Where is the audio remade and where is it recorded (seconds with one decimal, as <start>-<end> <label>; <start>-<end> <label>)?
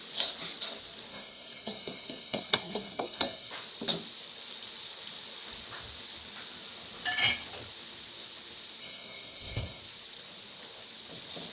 0.0-1.1 recorded; 1.1-3.5 remade; 3.5-8.8 recorded; 8.8-9.8 remade; 9.8-11.5 recorded